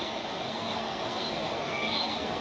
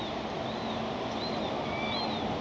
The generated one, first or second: first